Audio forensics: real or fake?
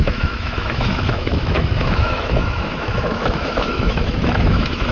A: fake